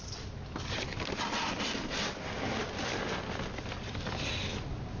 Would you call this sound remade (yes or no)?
no